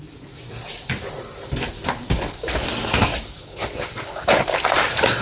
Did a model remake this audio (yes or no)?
no